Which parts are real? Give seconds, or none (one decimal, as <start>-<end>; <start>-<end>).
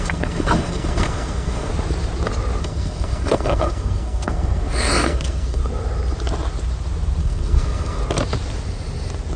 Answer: 1.7-2.6; 5.6-7.2; 8.0-9.4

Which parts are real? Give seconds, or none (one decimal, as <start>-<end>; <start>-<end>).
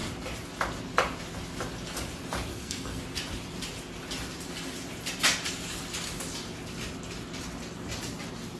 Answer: 0.0-2.5; 3.0-8.6